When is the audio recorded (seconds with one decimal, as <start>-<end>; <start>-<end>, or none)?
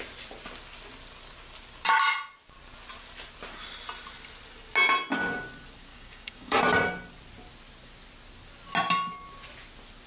0.0-5.9; 6.6-10.1